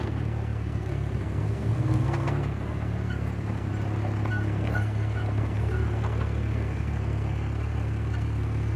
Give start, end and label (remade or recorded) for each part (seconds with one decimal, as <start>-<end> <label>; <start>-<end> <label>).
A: 0.0-3.7 remade; 3.7-4.3 recorded; 4.3-8.8 remade